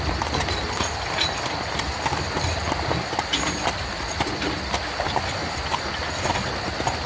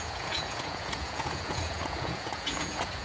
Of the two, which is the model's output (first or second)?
second